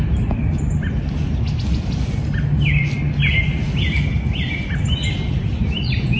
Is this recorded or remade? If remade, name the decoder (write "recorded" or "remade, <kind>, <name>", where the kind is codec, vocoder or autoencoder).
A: recorded